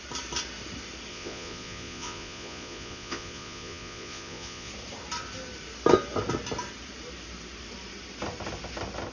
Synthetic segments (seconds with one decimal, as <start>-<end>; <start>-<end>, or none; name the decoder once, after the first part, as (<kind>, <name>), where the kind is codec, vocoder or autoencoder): 1.1-4.7 (vocoder, Vocos)